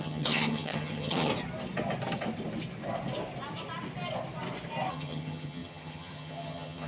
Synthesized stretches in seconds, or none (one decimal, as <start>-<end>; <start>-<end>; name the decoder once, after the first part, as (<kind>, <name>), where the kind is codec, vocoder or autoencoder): 0.0-1.3 (vocoder, HiFi-GAN); 4.9-6.9